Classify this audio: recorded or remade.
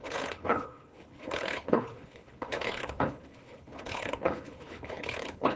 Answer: remade